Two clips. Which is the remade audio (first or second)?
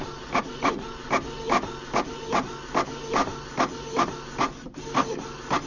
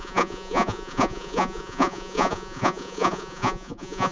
second